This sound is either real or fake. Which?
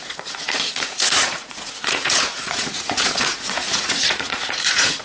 fake